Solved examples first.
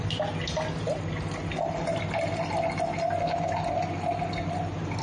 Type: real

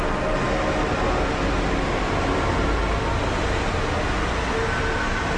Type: real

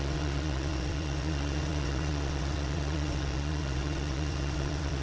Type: fake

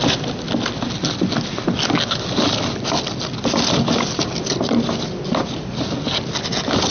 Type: real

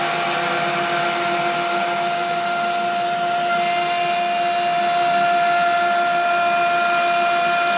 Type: real